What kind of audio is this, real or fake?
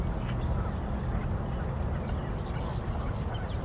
real